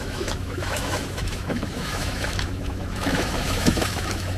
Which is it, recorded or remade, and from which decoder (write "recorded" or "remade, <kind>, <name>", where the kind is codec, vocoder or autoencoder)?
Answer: remade, autoencoder, DAC-VAE